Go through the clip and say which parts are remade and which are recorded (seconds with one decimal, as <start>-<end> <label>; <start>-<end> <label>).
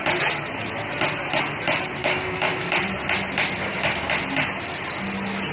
0.0-2.0 recorded; 2.0-2.7 remade; 2.7-3.6 recorded; 3.6-4.1 remade; 4.1-5.5 recorded